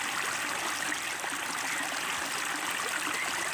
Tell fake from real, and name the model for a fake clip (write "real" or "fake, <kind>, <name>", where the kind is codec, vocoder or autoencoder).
real